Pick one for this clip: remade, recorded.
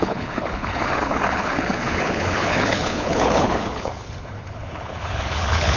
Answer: remade